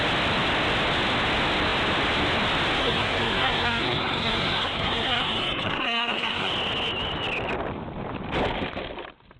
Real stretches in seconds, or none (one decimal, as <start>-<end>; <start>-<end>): 0.0-2.8; 6.5-9.4